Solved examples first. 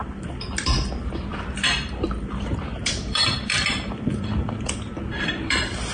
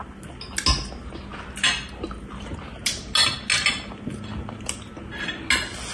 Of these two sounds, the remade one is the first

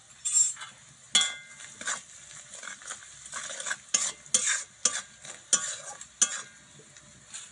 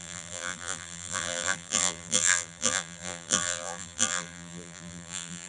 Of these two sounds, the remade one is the second